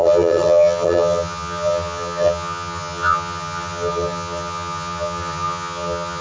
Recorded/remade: remade